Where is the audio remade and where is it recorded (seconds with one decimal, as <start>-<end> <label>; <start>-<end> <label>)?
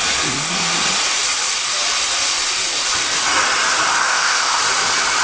0.0-4.0 recorded; 4.0-4.6 remade; 4.6-5.2 recorded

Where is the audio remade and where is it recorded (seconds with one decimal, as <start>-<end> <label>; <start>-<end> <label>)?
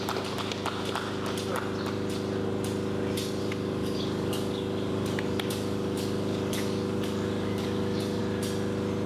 0.0-3.4 recorded; 3.4-8.2 remade; 8.2-9.1 recorded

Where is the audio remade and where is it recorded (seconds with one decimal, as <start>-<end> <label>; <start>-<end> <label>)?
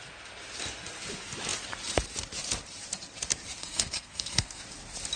0.0-3.6 recorded; 3.6-4.6 remade; 4.6-5.2 recorded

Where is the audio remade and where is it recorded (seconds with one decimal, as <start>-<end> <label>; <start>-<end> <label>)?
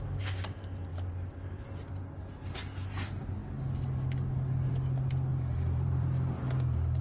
0.0-5.3 recorded; 5.3-7.0 remade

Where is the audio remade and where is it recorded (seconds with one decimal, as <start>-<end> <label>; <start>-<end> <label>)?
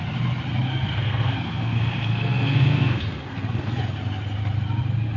0.0-0.7 recorded; 0.7-3.7 remade; 3.7-5.2 recorded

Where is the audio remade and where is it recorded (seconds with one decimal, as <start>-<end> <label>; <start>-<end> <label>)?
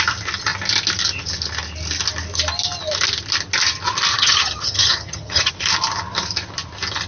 0.0-4.1 recorded; 4.1-5.5 remade; 5.5-7.1 recorded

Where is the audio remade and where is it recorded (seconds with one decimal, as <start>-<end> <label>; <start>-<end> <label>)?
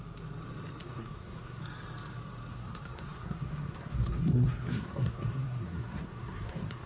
0.0-0.8 recorded; 0.8-1.6 remade; 1.6-2.5 recorded; 2.5-6.9 remade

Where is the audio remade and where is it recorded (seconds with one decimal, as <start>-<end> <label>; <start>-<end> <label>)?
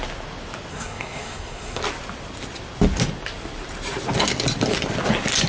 0.0-0.7 recorded; 0.7-1.8 remade; 1.8-5.5 recorded